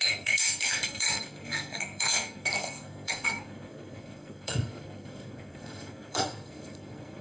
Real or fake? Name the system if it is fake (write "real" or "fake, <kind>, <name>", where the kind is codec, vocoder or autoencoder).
fake, codec, SNAC